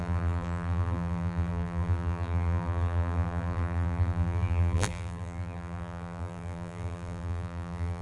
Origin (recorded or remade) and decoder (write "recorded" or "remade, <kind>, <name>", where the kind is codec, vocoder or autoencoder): remade, vocoder, BigVGAN v2